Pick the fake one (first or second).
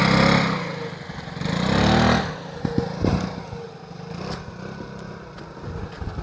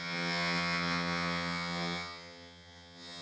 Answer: second